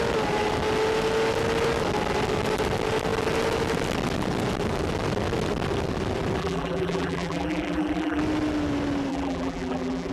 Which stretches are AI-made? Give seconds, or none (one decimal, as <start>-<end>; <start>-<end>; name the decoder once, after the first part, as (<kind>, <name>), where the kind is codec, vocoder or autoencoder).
6.4-8.2 (vocoder, BigVGAN v2); 9.1-10.1